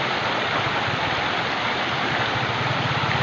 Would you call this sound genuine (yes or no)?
yes